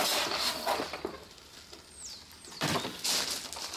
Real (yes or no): yes